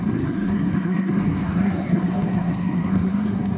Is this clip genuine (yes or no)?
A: no